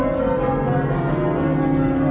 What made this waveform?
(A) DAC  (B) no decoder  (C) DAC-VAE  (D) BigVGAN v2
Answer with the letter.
B